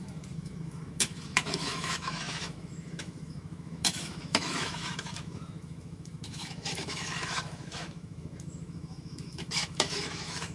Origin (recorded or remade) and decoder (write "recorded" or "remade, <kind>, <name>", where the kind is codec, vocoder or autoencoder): remade, autoencoder, DAC-VAE